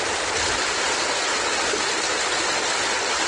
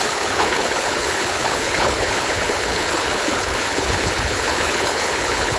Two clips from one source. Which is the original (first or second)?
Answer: first